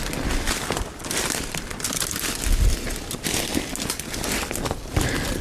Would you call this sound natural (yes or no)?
yes